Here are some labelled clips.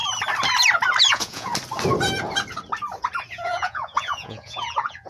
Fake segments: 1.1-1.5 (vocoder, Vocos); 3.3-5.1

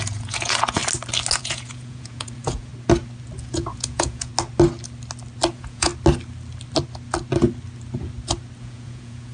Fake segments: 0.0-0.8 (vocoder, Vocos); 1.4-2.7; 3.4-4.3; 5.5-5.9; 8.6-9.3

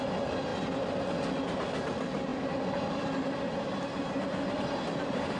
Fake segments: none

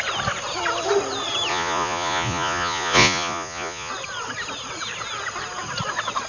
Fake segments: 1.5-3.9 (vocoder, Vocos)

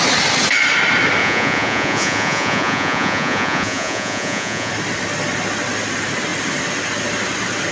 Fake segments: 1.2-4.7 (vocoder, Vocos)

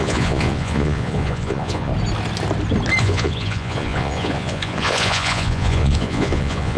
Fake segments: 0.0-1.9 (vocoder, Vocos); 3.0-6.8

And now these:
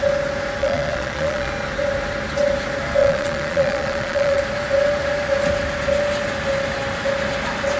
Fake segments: 0.6-1.5 (vocoder, Vocos); 3.0-4.4